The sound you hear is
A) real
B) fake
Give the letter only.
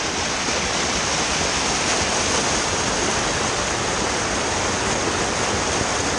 A